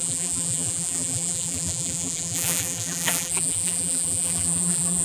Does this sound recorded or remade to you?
remade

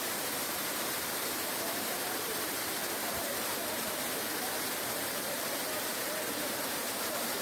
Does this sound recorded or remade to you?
remade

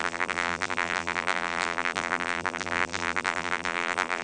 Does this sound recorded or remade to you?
remade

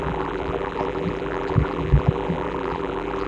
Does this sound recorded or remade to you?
remade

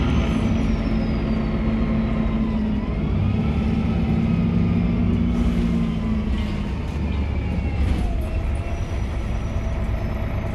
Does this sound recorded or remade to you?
recorded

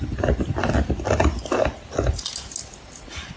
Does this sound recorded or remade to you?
recorded